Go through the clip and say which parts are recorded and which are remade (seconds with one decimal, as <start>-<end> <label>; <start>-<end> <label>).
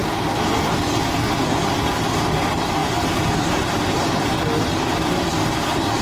0.0-6.0 recorded